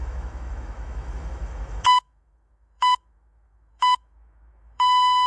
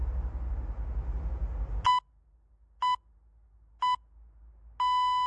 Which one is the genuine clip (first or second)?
second